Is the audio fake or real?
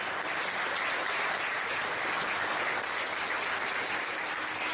real